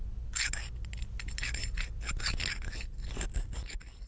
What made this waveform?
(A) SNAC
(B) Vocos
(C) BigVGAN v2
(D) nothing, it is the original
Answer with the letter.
D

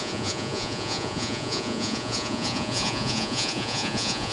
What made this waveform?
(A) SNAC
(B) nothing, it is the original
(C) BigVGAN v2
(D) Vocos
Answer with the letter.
D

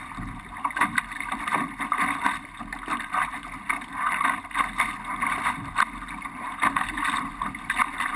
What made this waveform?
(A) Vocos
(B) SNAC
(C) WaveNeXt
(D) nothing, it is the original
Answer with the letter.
D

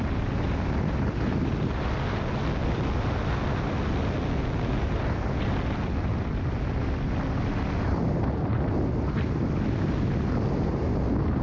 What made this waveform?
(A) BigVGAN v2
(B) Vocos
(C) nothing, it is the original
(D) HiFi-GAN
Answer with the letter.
C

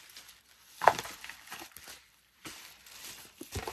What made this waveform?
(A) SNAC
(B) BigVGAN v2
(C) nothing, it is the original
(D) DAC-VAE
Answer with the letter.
B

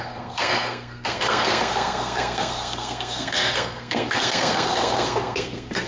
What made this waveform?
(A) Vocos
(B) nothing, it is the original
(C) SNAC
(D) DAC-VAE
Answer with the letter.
C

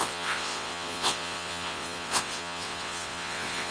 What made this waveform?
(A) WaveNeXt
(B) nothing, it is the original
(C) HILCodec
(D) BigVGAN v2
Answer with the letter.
A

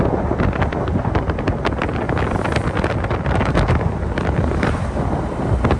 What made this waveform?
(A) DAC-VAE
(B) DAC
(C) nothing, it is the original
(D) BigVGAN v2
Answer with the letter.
C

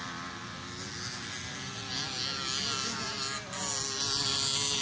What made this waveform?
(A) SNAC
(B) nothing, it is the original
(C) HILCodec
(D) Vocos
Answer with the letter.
B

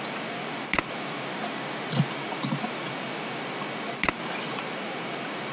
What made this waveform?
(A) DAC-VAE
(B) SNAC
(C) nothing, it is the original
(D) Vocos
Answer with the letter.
C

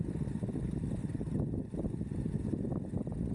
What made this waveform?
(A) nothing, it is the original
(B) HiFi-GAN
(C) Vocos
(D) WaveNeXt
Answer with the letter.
A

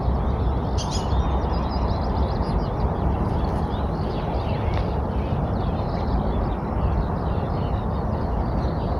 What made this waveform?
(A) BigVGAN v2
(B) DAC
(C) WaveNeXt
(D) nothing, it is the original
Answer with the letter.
D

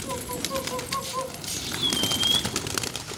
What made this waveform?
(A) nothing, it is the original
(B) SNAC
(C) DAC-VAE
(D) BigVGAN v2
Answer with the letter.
A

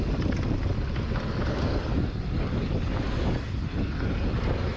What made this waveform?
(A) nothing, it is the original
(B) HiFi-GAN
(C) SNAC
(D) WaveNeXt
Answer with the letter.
A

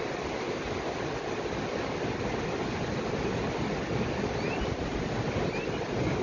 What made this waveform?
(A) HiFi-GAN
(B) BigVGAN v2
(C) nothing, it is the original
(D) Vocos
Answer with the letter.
C